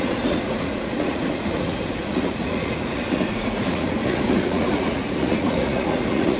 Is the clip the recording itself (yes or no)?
no